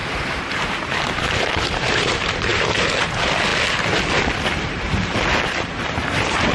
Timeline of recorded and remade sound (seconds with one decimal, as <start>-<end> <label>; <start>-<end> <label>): 0.0-3.5 remade; 3.5-4.4 recorded; 4.4-6.5 remade